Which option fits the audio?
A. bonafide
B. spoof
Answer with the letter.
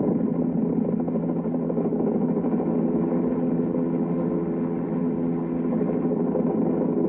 A